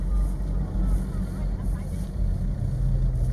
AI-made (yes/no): no